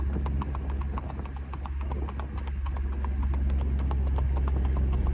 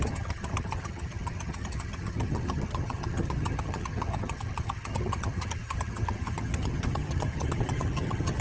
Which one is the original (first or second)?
first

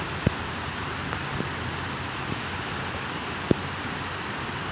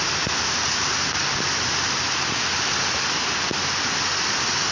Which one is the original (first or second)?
second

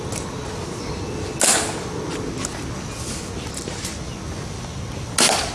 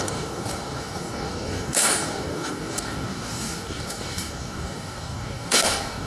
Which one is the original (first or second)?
first